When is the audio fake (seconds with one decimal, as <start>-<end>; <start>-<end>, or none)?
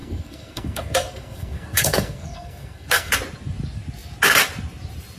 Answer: 0.0-3.1